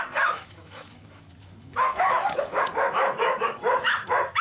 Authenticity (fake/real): fake